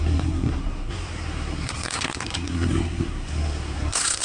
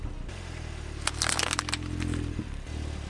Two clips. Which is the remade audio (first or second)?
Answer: first